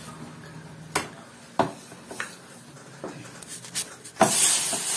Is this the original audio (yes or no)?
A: yes